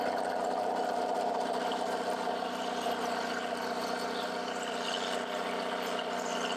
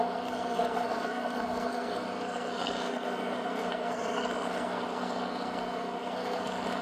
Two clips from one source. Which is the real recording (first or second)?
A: first